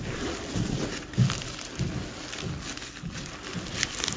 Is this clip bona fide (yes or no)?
yes